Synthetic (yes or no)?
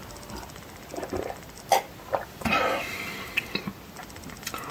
no